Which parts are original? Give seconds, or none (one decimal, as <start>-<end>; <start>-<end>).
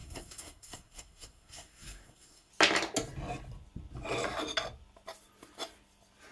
2.5-6.3